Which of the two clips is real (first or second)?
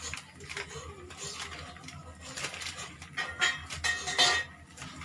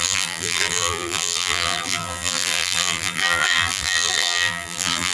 first